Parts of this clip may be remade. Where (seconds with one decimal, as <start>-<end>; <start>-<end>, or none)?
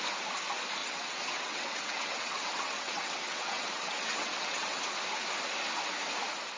0.8-4.8